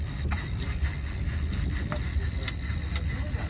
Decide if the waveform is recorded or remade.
recorded